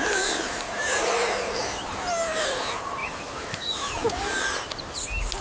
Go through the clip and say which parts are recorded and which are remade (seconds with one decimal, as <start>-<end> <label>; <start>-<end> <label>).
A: 0.0-3.0 recorded; 3.0-3.9 remade; 3.9-5.4 recorded